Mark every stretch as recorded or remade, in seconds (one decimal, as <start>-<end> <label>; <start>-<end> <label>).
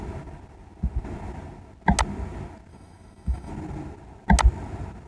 0.0-2.7 recorded; 2.7-3.5 remade; 3.5-5.1 recorded